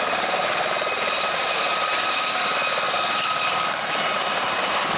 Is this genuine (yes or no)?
no